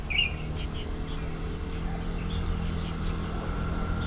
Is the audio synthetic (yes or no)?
no